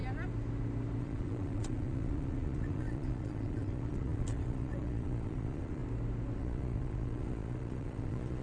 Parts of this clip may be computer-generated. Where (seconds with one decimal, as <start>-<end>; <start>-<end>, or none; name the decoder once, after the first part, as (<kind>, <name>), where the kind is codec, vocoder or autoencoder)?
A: 1.0-5.8 (vocoder, Vocos); 6.4-8.4